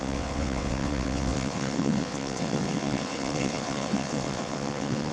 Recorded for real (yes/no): no